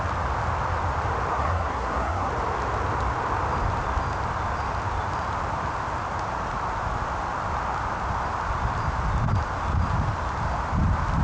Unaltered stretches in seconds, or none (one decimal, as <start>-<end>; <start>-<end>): 0.0-1.3; 2.3-11.2